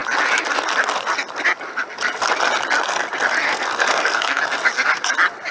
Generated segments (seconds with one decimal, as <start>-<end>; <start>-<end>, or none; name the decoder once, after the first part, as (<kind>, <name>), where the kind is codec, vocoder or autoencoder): 3.5-4.4 (codec, SNAC)